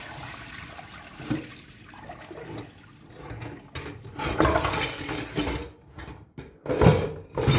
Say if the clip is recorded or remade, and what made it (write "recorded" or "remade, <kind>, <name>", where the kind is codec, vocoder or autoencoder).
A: recorded